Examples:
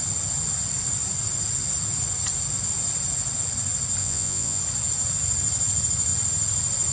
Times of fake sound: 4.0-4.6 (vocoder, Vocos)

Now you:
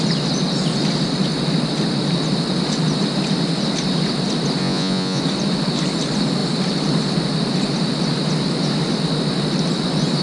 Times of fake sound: 4.6-5.2 (vocoder, Vocos)